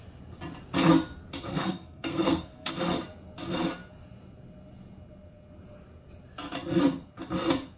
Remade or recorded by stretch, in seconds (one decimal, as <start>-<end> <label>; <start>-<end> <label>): 0.0-1.5 recorded; 1.5-2.7 remade; 2.7-7.8 recorded